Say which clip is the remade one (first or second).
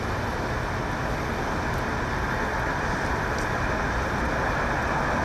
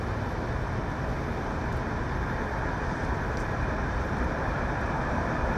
second